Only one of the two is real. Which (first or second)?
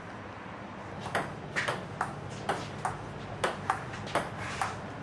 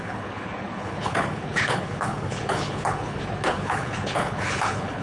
first